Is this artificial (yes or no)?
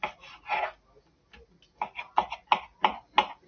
no